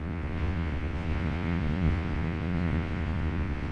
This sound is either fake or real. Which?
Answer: fake